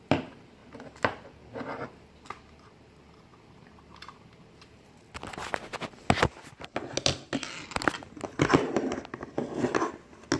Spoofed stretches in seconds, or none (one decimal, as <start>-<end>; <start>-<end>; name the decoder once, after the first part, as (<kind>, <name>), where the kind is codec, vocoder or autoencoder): 0.6-4.9 (vocoder, BigVGAN v2)